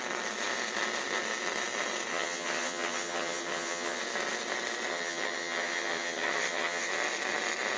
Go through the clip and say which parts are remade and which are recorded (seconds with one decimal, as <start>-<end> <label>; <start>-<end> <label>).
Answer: 0.0-2.1 recorded; 2.1-4.0 remade; 4.0-4.9 recorded; 4.9-6.9 remade; 6.9-7.8 recorded